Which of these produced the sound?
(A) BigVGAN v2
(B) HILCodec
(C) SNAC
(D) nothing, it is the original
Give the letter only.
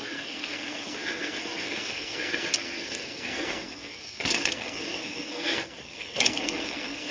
C